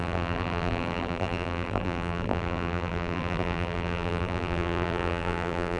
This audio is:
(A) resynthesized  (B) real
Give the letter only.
A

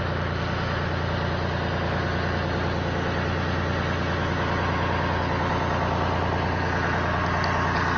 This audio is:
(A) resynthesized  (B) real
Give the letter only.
B